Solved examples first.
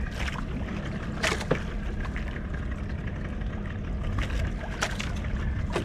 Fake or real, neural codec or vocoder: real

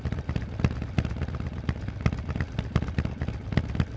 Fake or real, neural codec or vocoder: real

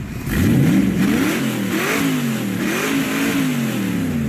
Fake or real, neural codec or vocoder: real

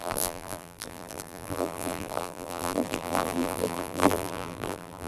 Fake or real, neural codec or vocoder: fake, vocoder, BigVGAN v2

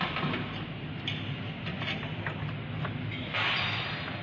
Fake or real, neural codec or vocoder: real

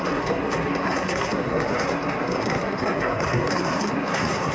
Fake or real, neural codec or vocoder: fake, codec, SNAC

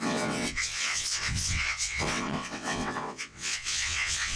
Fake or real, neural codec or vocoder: fake, vocoder, WaveNeXt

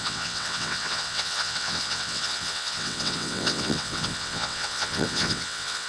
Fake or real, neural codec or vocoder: fake, vocoder, WaveNeXt